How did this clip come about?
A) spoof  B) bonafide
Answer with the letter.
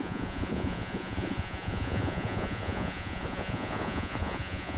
A